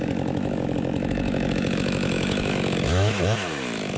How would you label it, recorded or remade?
remade